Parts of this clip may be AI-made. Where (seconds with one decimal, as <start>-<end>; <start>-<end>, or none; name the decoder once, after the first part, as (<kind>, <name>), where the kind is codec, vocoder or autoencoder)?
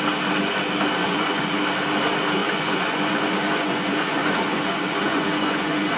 1.0-1.6 (vocoder, Vocos); 2.4-6.0